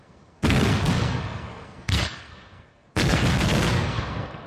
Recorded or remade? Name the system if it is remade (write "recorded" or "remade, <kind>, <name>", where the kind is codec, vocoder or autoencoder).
remade, codec, SNAC